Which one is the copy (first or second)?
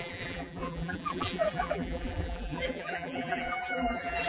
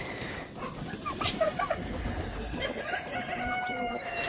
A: first